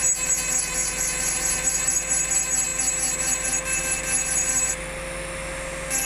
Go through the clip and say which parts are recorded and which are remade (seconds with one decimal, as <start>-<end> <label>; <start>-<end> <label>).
0.0-6.1 recorded